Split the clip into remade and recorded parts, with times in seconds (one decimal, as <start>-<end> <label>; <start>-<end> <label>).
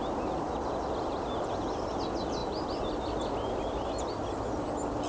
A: 0.0-5.1 recorded